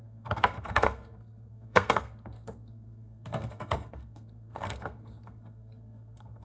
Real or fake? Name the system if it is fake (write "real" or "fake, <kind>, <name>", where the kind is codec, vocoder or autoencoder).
fake, codec, SNAC